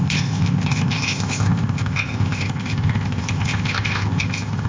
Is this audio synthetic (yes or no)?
yes